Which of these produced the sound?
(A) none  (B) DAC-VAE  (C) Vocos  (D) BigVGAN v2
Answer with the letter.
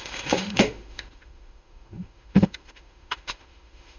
B